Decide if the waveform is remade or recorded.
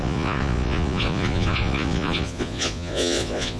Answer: remade